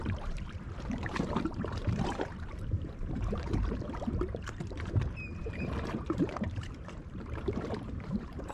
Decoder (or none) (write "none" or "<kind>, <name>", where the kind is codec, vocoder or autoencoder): vocoder, BigVGAN v2